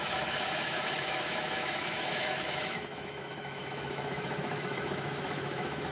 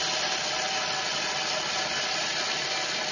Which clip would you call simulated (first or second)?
first